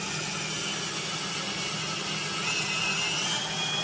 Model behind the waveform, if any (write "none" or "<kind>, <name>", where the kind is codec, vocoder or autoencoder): none